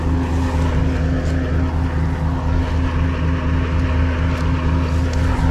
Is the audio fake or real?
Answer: real